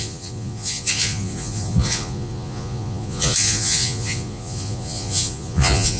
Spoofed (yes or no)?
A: yes